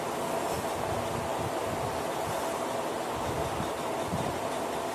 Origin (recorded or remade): recorded